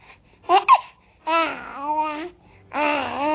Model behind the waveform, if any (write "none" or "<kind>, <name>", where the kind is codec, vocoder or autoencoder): none